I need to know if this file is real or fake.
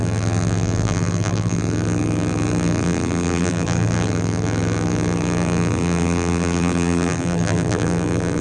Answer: fake